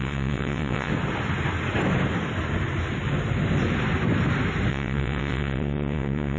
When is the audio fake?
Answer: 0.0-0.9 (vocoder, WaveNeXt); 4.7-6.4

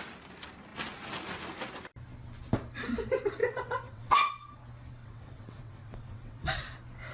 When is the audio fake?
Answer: 3.4-4.3 (vocoder, WaveNeXt); 5.0-6.4

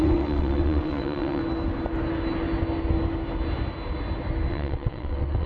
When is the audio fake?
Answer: 0.0-1.4 (vocoder, WaveNeXt); 4.5-5.5

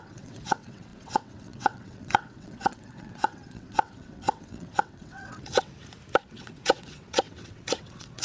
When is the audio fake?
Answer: 0.0-5.7 (vocoder, WaveNeXt); 6.3-8.2

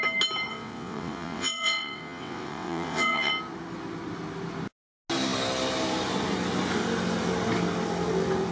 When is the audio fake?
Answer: 0.5-3.3 (vocoder, WaveNeXt)

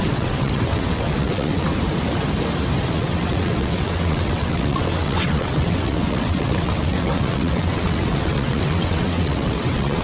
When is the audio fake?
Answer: 0.0-1.7 (vocoder, WaveNeXt); 2.9-10.0